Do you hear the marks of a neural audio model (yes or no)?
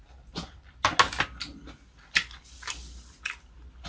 no